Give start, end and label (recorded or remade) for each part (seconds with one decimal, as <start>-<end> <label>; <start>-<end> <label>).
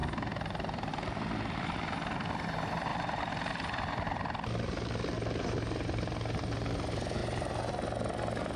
0.0-0.9 remade; 0.9-2.9 recorded; 2.9-3.8 remade; 3.8-7.2 recorded; 7.2-7.7 remade; 7.7-8.6 recorded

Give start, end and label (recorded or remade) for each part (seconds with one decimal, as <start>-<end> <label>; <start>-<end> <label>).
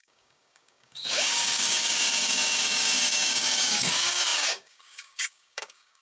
0.0-6.0 remade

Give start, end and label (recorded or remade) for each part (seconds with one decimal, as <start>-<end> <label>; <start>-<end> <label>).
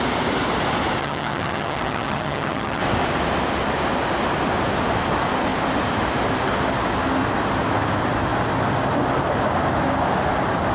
0.0-1.0 recorded; 1.0-2.8 remade; 2.8-10.7 recorded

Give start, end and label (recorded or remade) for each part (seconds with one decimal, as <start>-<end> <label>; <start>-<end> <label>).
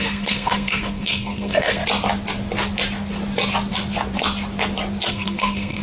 0.0-1.8 remade; 1.8-5.1 recorded; 5.1-5.8 remade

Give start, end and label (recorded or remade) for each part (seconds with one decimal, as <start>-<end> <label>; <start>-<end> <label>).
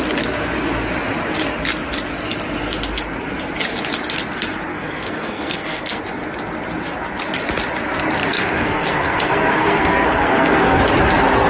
0.0-4.7 recorded; 4.7-6.0 remade; 6.0-8.2 recorded; 8.2-10.8 remade; 10.8-11.5 recorded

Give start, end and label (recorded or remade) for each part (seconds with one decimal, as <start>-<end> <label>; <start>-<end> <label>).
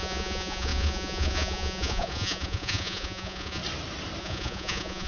0.0-3.6 remade; 3.6-4.2 recorded; 4.2-5.1 remade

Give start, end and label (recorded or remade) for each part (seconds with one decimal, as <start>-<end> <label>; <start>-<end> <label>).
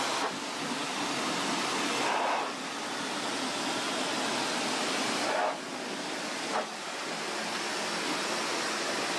0.0-9.2 recorded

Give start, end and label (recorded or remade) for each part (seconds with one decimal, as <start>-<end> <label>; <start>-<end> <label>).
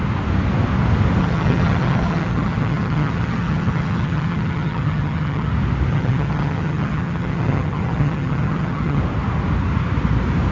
0.0-1.2 recorded; 1.2-5.5 remade; 5.5-5.9 recorded; 5.9-9.0 remade; 9.0-10.5 recorded